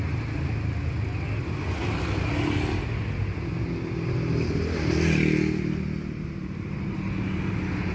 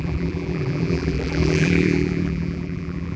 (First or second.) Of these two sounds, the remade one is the second